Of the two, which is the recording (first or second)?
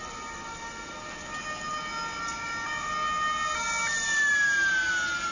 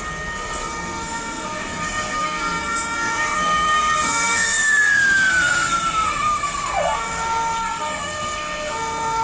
first